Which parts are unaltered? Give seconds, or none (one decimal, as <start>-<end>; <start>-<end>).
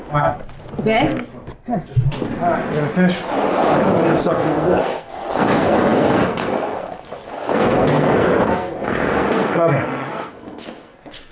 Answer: 0.4-4.2